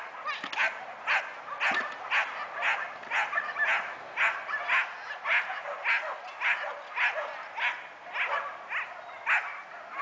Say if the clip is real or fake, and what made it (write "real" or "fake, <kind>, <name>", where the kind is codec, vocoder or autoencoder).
real